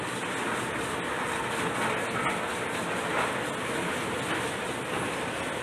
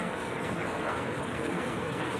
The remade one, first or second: second